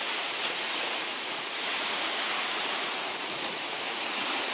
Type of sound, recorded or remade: remade